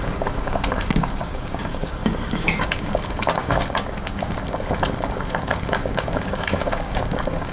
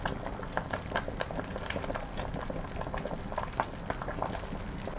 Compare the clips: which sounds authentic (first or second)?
second